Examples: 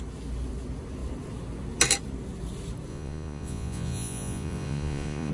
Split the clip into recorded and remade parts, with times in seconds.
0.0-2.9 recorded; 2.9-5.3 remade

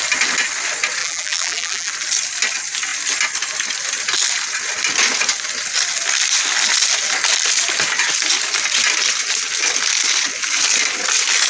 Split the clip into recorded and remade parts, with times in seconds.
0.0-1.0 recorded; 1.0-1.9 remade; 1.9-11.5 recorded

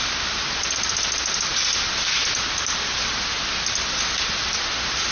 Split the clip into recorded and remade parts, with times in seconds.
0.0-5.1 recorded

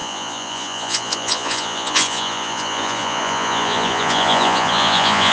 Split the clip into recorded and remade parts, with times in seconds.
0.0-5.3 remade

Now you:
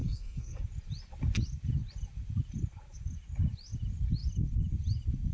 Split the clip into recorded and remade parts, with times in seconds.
0.0-0.6 remade; 0.6-5.3 recorded

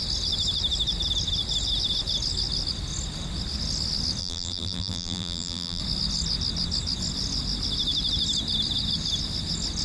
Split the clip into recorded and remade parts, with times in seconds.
0.0-4.2 recorded; 4.2-5.8 remade; 5.8-9.8 recorded

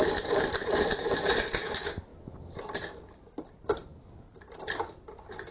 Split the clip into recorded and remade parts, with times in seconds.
0.0-5.5 recorded

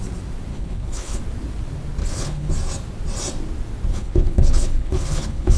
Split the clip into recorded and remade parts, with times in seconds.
0.0-0.5 recorded; 0.5-1.2 remade; 1.2-2.0 recorded; 2.0-2.5 remade; 2.5-3.9 recorded; 3.9-5.6 remade